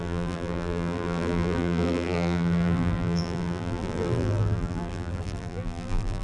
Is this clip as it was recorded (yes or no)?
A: no